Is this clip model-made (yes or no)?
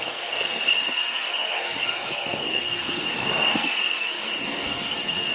yes